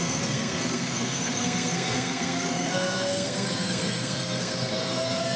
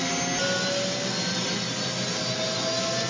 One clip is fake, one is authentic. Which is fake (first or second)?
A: first